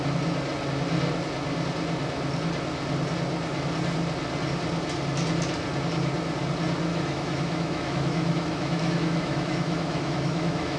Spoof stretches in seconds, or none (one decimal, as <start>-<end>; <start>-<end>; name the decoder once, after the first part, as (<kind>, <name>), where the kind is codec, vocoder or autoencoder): 6.9-10.8 (autoencoder, DAC-VAE)